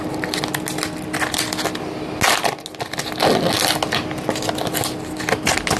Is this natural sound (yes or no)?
yes